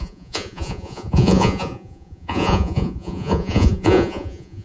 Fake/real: fake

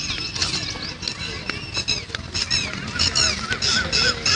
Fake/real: real